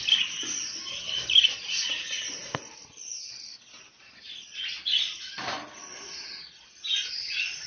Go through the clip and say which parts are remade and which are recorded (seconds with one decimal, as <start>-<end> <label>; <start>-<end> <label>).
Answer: 0.0-7.7 recorded